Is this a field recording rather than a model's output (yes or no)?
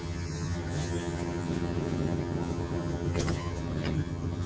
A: no